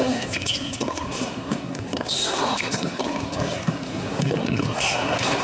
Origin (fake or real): fake